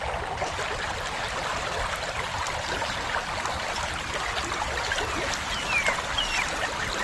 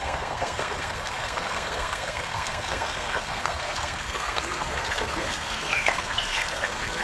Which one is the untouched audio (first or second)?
first